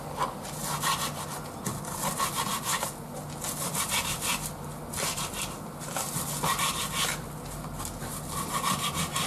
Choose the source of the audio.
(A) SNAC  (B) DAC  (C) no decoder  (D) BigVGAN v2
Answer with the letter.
C